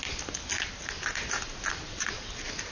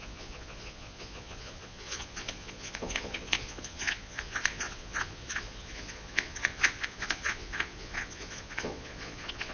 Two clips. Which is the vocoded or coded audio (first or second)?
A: second